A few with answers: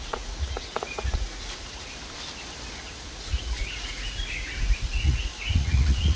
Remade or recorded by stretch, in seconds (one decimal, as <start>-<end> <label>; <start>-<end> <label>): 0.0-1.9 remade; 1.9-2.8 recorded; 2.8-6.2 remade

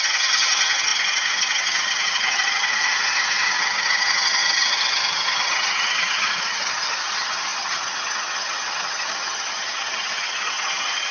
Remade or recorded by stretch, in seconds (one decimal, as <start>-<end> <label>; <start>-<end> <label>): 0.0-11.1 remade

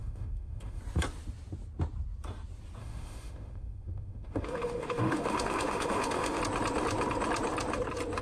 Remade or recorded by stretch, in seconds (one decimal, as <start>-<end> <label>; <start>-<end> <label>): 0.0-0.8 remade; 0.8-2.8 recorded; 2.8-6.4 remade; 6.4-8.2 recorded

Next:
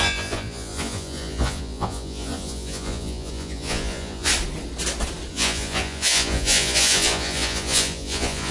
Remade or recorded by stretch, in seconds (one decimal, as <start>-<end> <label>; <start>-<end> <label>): 0.0-4.3 remade; 4.3-5.3 recorded; 5.3-8.5 remade

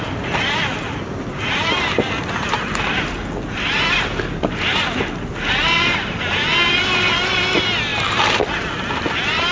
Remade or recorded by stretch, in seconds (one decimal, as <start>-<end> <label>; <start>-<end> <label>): 0.0-7.9 recorded; 7.9-9.0 remade; 9.0-9.5 recorded